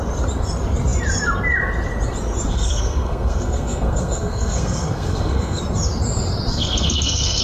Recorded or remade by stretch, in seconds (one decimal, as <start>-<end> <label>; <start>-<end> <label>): 0.0-2.5 recorded; 2.5-5.6 remade; 5.6-6.5 recorded; 6.5-7.4 remade